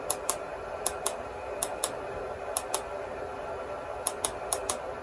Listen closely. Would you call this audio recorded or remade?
recorded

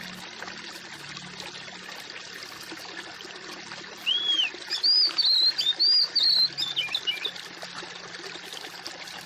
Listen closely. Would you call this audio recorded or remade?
recorded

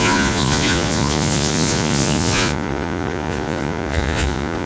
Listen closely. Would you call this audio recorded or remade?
remade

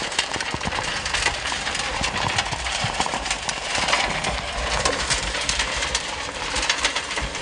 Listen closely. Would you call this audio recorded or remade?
remade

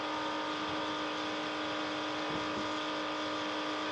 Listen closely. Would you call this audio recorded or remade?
recorded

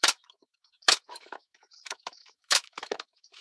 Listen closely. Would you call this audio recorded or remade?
remade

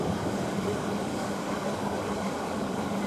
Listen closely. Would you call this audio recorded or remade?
remade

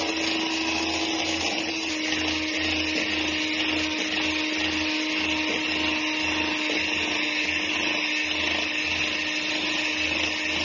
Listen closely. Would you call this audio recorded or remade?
recorded